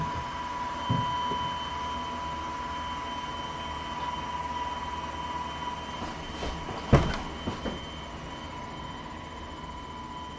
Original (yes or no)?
yes